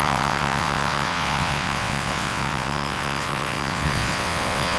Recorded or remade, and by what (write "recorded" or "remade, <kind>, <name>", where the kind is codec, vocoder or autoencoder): remade, vocoder, WaveNeXt